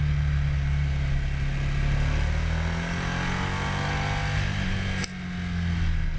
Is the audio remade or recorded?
recorded